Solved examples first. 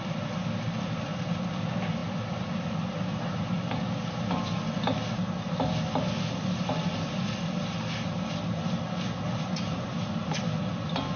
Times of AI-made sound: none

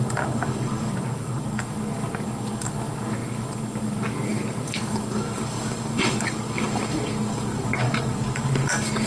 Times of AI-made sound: 0.0-9.1 (codec, DAC)

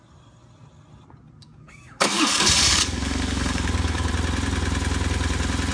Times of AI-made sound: 1.4-4.1 (codec, DAC)